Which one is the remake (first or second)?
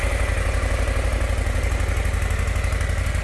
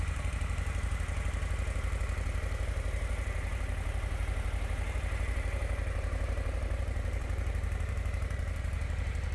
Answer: second